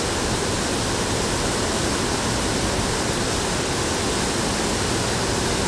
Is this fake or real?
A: real